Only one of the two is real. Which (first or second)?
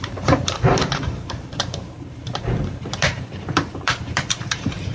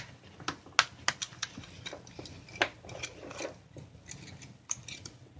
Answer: second